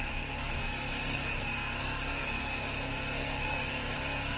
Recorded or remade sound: remade